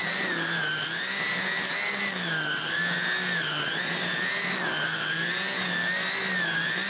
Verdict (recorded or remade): recorded